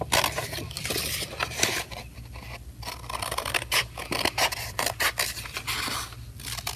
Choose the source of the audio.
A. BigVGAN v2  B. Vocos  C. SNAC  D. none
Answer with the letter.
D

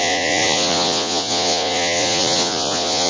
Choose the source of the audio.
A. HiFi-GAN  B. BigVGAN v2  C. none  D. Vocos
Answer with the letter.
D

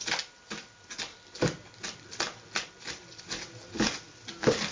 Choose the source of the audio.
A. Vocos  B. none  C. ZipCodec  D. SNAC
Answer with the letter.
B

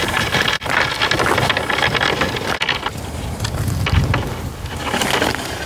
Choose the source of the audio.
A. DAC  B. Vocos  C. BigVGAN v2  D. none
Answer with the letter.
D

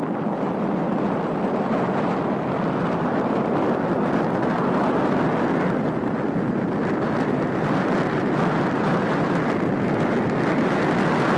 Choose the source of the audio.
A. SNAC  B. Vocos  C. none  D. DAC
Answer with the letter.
C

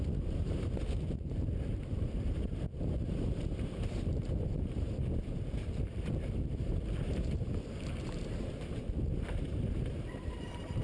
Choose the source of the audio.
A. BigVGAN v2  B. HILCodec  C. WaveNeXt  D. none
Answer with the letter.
A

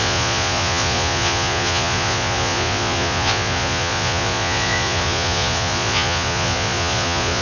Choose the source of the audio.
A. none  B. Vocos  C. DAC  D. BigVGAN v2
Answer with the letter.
B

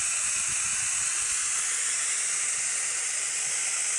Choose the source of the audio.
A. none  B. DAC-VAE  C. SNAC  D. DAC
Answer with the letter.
A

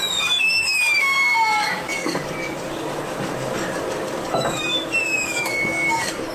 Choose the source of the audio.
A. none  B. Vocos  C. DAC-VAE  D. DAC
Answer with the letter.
D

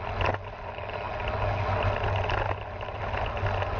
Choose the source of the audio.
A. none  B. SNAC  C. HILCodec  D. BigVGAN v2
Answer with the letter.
A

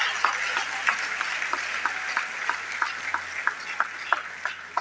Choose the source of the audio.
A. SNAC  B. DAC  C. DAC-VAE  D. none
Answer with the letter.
D